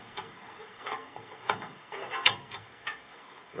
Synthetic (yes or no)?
yes